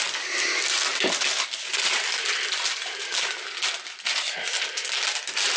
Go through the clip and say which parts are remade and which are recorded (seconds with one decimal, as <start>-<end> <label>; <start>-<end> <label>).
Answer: 0.0-5.6 recorded